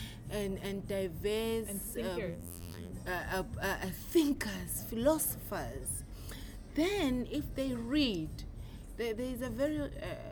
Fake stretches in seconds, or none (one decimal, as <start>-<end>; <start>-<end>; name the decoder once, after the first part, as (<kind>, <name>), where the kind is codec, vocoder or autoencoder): 2.3-2.9 (vocoder, BigVGAN v2)

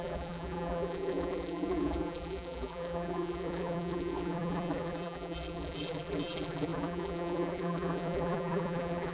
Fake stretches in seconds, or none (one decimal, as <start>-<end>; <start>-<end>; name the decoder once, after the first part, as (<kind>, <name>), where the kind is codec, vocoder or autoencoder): 0.0-9.1 (vocoder, BigVGAN v2)

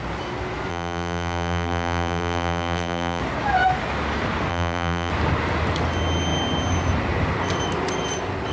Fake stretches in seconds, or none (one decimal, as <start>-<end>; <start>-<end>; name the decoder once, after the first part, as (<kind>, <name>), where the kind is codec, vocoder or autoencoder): 0.7-3.2 (vocoder, BigVGAN v2); 4.5-5.1

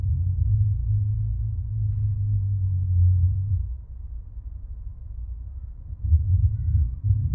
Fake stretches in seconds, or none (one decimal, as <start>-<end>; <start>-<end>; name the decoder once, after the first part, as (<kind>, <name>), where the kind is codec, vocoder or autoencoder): none

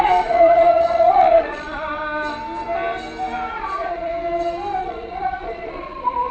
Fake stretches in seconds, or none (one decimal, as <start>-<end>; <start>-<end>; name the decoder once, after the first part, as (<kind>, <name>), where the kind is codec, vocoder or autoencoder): 0.0-2.0 (vocoder, Vocos); 3.5-4.1; 4.8-6.3

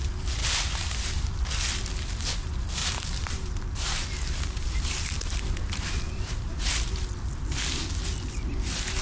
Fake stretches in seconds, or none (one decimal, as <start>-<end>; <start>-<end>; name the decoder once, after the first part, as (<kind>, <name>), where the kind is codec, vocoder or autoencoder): 0.4-1.4 (vocoder, BigVGAN v2); 2.8-6.8